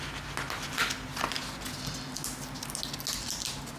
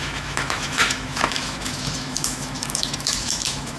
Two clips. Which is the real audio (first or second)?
first